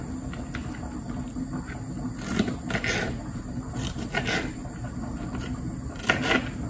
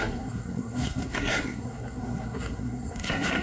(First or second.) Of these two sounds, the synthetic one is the second